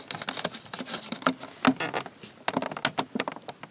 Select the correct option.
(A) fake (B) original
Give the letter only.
B